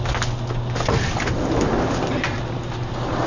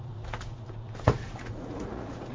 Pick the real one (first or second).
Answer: first